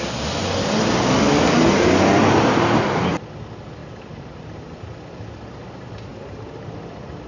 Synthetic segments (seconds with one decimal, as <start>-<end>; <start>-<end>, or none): 3.8-4.7; 6.1-7.3